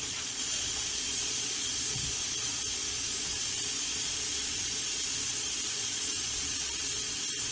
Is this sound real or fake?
fake